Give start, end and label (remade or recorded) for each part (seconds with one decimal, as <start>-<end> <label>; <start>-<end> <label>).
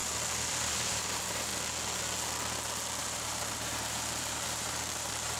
0.0-0.9 recorded; 0.9-1.5 remade; 1.5-3.0 recorded; 3.0-5.4 remade